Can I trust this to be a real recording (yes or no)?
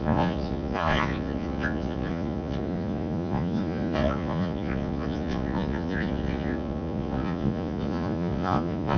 no